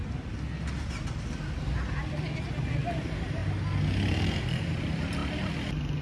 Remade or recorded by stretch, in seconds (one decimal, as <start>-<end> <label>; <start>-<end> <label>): 0.0-2.5 recorded; 2.5-3.4 remade; 3.4-4.1 recorded; 4.1-5.2 remade; 5.2-6.0 recorded